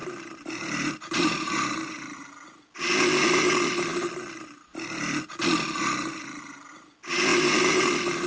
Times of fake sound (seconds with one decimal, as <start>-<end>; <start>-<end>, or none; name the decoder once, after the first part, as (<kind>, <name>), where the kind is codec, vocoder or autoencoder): 0.0-2.2 (vocoder, BigVGAN v2); 7.3-7.9